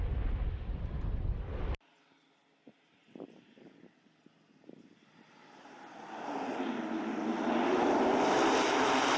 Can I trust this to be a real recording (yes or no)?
yes